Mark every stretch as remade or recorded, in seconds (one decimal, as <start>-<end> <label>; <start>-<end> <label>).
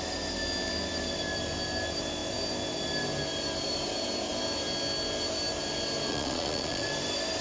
0.0-6.1 recorded; 6.1-6.9 remade; 6.9-7.4 recorded